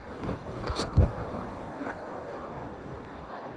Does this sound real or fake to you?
fake